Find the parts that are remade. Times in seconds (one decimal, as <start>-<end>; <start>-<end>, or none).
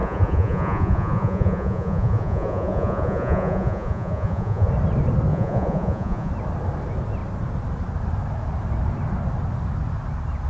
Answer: 0.0-4.7; 5.3-6.3